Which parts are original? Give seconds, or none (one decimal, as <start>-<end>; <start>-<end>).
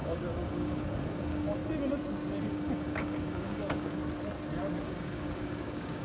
1.6-2.4; 4.0-4.8